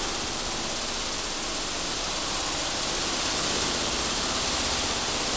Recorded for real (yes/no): no